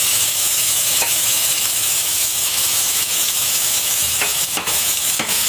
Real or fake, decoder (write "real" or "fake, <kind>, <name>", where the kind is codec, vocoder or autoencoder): fake, autoencoder, DAC-VAE